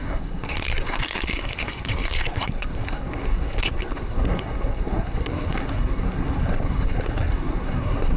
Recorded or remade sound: remade